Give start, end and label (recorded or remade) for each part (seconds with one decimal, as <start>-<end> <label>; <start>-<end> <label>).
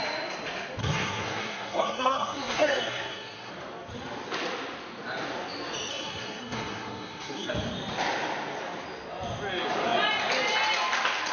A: 0.0-0.8 recorded; 0.8-3.5 remade; 3.5-5.9 recorded; 5.9-7.5 remade; 7.5-11.3 recorded